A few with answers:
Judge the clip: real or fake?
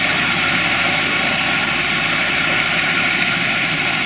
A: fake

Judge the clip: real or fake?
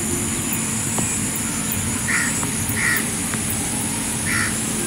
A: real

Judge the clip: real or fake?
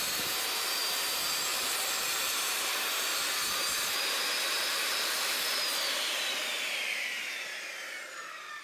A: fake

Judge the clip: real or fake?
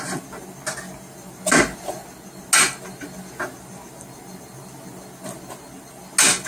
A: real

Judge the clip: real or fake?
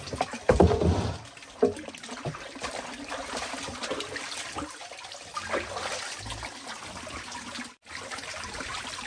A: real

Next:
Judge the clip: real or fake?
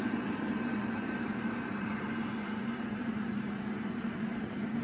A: fake